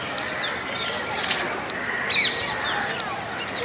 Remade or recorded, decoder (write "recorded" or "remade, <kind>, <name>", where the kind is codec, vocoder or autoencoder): recorded